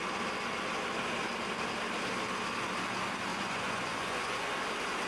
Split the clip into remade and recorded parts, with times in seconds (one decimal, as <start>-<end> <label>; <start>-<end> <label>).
0.0-3.3 recorded; 3.3-4.5 remade; 4.5-5.1 recorded